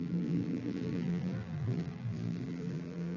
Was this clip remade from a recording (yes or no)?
yes